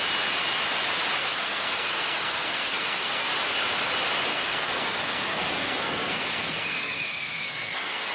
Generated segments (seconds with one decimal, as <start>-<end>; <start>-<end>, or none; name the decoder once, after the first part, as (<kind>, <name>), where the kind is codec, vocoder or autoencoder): 1.2-3.3 (codec, SNAC); 4.3-8.1